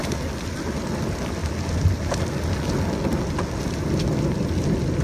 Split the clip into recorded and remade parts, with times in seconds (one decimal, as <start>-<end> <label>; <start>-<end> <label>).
0.0-5.0 recorded